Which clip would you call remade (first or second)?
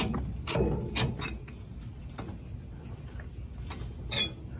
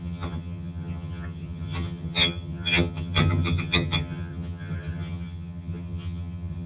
second